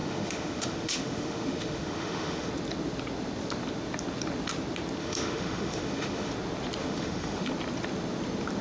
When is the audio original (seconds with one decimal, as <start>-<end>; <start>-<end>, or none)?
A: 2.5-5.0; 6.3-6.8; 7.5-8.6